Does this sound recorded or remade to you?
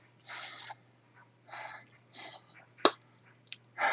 recorded